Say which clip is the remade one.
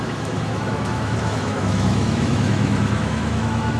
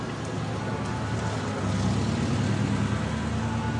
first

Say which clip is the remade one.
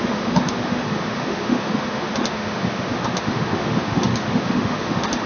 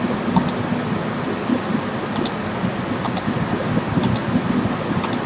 first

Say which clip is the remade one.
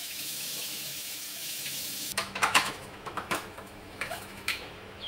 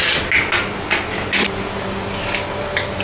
first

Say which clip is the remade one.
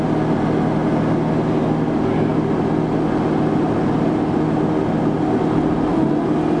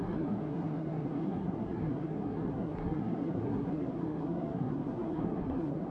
second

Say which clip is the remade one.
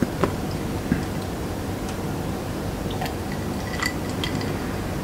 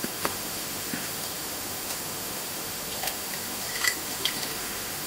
second